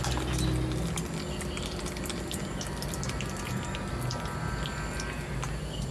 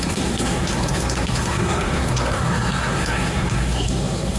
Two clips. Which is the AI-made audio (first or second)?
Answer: second